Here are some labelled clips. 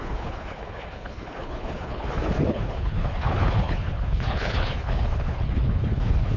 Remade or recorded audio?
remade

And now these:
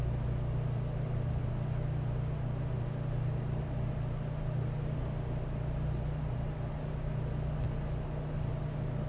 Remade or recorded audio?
recorded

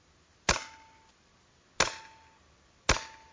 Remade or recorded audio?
recorded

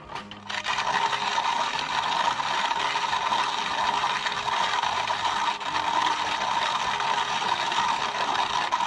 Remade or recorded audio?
recorded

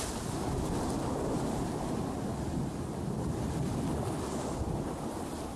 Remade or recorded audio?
recorded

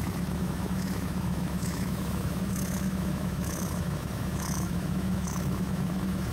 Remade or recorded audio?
remade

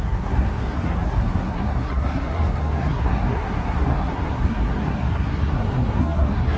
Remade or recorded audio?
remade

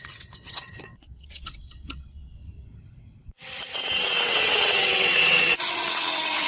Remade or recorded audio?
remade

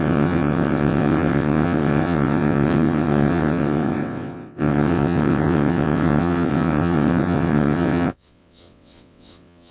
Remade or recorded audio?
remade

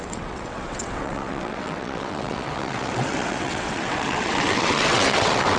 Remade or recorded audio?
remade